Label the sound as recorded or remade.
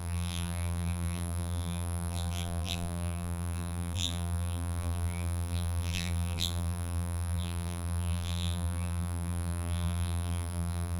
remade